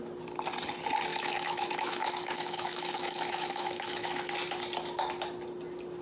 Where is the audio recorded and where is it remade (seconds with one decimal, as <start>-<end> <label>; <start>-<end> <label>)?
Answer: 0.0-1.1 recorded; 1.1-4.3 remade; 4.3-6.0 recorded